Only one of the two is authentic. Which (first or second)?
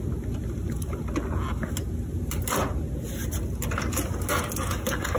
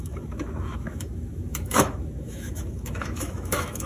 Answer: first